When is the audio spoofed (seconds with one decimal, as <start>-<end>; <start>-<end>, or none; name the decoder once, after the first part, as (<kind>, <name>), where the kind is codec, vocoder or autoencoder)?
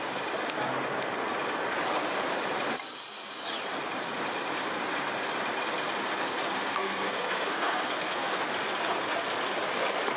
6.7-8.4 (codec, SNAC)